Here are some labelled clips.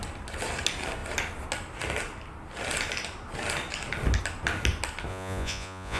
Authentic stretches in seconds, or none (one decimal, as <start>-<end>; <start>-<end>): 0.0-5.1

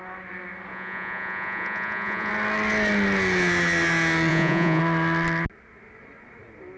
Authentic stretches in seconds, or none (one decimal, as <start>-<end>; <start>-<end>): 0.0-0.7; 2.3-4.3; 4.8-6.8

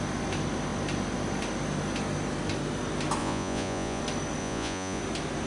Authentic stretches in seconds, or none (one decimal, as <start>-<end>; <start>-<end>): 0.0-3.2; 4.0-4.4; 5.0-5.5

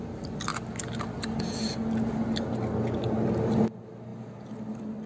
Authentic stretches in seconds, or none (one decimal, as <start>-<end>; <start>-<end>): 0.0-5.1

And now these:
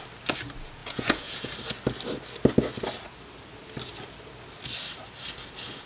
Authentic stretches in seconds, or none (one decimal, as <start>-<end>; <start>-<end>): 0.0-0.8; 1.5-5.9